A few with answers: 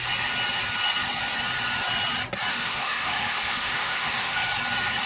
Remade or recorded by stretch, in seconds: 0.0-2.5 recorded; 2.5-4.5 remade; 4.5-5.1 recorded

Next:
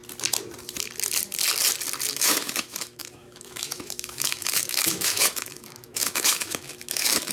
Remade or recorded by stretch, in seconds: 0.0-2.1 recorded; 2.1-7.3 remade

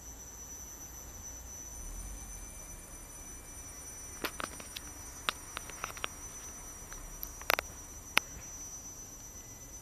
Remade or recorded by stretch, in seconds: 0.0-9.8 recorded

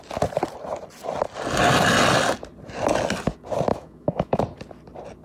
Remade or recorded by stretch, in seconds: 0.0-3.7 recorded; 3.7-4.4 remade; 4.4-5.2 recorded

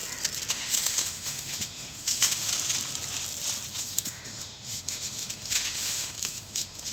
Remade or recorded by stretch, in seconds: 0.0-0.5 recorded; 0.5-2.5 remade; 2.5-3.7 recorded; 3.7-6.9 remade

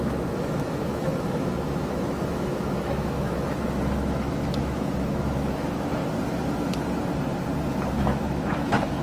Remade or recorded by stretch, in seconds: 0.0-6.0 remade; 6.0-7.9 recorded; 7.9-9.0 remade